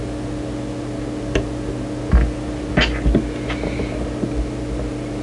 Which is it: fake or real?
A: real